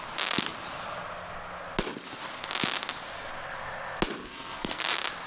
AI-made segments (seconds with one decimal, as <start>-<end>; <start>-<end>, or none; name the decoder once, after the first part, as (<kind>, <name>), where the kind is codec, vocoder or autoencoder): 4.2-4.8 (codec, SNAC)